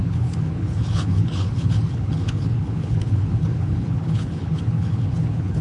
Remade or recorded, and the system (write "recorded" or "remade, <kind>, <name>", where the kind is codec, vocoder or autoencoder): remade, codec, HILCodec